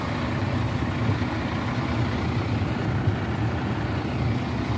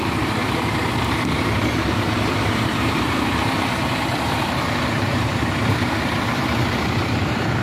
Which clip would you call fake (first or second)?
second